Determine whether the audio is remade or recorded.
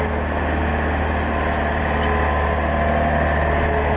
recorded